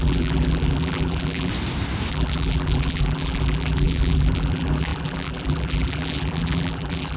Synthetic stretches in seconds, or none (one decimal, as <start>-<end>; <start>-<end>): 0.0-1.5; 2.1-7.2